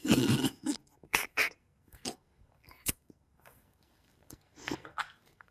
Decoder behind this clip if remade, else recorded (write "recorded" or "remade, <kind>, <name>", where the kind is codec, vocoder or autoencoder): remade, codec, SNAC